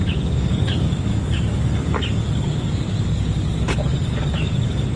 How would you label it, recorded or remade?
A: remade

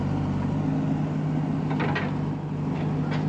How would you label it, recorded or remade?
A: recorded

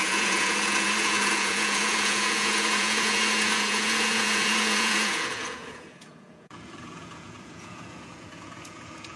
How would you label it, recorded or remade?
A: remade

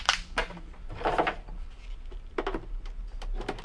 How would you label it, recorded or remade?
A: recorded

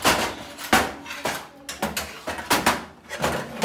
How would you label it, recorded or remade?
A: recorded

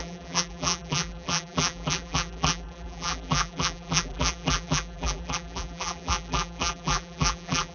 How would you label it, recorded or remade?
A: remade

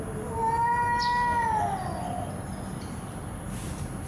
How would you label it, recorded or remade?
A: recorded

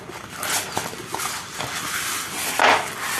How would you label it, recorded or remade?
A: recorded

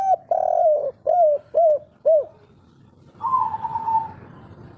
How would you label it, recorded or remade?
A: recorded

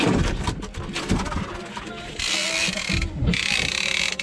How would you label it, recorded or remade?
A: recorded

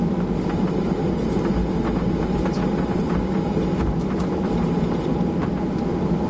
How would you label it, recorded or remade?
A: recorded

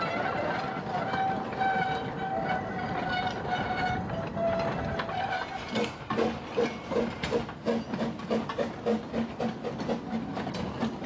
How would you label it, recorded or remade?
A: recorded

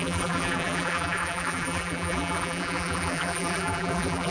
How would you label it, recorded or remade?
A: remade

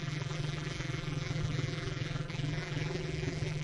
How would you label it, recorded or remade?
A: remade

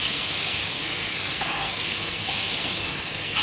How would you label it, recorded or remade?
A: remade